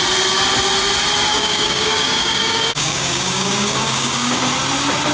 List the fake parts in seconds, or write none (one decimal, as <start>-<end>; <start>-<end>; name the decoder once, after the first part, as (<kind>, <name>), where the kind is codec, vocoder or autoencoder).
1.3-4.4 (codec, DAC)